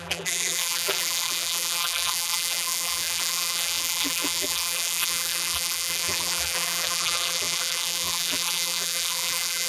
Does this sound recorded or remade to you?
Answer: remade